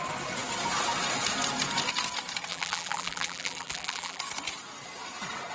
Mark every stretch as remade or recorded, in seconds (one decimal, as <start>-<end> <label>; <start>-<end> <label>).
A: 0.0-2.5 recorded; 2.5-4.2 remade; 4.2-5.5 recorded